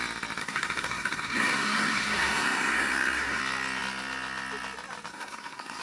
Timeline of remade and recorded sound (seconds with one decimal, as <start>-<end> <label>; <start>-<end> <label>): 0.0-0.4 recorded; 0.4-3.4 remade; 3.4-5.1 recorded; 5.1-5.8 remade